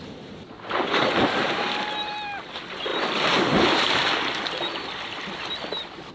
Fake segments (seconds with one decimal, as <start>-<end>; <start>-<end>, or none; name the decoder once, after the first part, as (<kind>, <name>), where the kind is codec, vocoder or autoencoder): 2.9-6.1 (vocoder, BigVGAN v2)